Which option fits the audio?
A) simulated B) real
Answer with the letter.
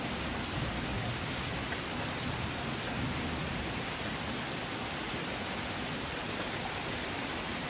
B